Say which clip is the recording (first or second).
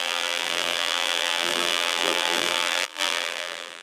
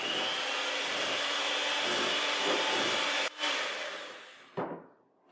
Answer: second